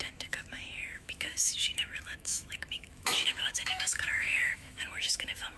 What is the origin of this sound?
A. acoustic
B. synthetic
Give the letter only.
B